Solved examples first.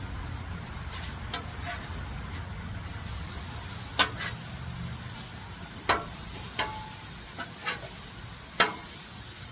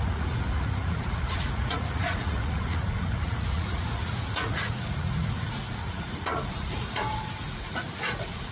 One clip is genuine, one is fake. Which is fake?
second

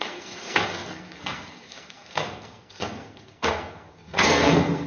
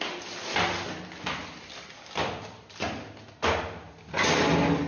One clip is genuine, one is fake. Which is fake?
first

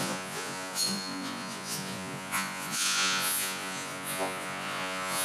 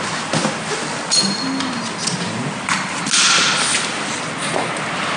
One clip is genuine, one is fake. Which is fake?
first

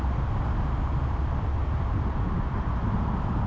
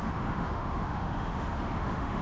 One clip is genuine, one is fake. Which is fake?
second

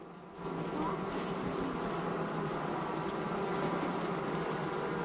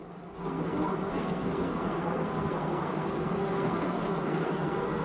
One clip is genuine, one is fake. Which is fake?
second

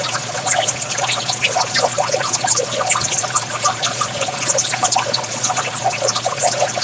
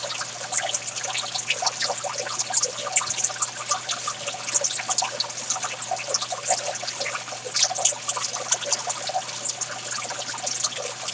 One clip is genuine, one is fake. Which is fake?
first